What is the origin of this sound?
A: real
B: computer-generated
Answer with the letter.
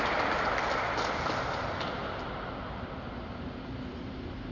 A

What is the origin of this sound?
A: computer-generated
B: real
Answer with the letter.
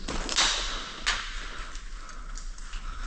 B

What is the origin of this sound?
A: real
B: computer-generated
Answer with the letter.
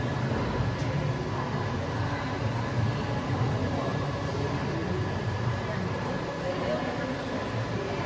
A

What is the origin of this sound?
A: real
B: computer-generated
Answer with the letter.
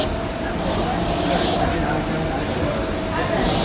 A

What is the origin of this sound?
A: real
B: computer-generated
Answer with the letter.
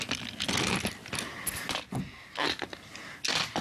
A